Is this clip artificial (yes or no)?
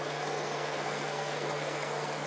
yes